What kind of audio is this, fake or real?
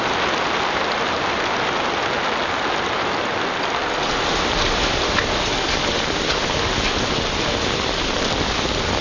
real